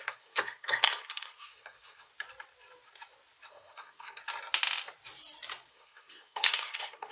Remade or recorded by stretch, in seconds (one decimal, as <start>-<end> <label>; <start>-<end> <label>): 0.0-2.1 remade; 2.1-3.5 recorded; 3.5-4.2 remade; 4.2-5.7 recorded; 5.7-7.1 remade